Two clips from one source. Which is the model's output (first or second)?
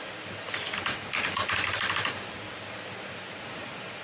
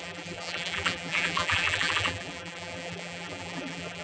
second